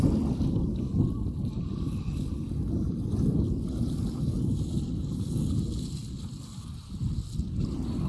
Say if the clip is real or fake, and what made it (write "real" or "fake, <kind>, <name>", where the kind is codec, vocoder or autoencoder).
real